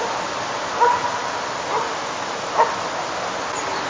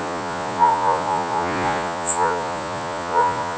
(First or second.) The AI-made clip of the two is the second